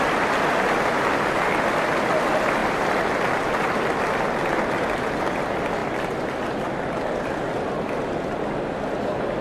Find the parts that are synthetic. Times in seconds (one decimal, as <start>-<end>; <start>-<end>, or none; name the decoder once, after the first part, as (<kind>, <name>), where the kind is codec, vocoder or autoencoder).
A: none